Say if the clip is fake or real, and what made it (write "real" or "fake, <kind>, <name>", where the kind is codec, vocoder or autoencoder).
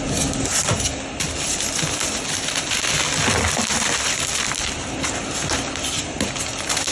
real